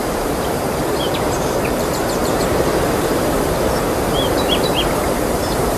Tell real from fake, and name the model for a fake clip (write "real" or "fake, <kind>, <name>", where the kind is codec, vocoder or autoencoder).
fake, vocoder, BigVGAN v2